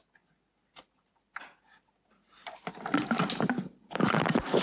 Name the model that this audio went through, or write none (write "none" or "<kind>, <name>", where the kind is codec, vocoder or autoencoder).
none